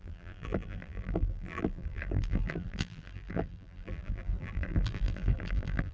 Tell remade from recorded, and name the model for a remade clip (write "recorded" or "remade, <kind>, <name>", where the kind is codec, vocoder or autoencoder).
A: remade, vocoder, BigVGAN v2